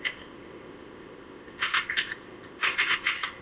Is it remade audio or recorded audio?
remade